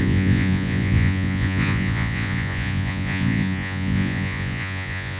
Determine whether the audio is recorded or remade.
remade